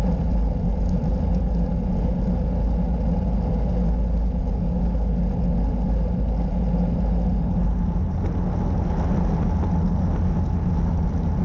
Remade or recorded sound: recorded